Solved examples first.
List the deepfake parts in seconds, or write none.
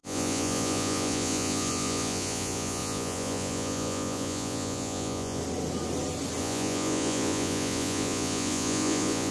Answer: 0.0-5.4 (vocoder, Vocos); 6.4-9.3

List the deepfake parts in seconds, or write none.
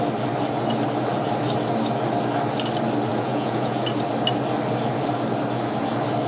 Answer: 3.1-3.8 (vocoder, Vocos)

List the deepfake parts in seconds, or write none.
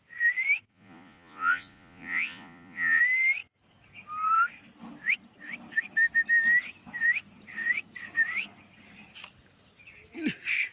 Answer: 0.7-3.0 (vocoder, Vocos)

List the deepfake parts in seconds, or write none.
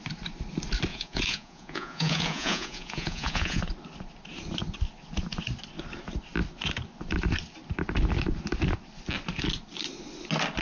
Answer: 0.9-3.6 (vocoder, Vocos)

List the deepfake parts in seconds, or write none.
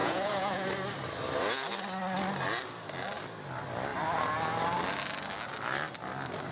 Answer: 0.0-0.7 (vocoder, Vocos)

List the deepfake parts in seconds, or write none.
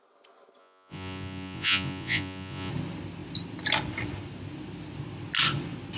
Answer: 0.6-2.7 (vocoder, Vocos)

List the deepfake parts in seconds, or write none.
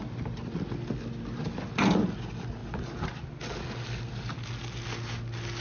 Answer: none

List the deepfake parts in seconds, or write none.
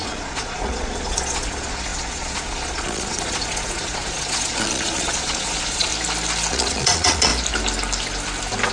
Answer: 0.0-5.9 (vocoder, Vocos); 6.5-7.3